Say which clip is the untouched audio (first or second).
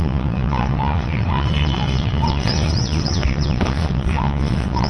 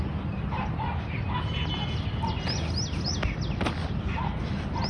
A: second